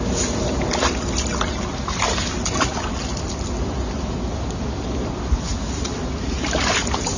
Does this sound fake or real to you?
real